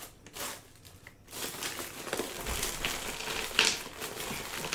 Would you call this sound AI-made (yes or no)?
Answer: no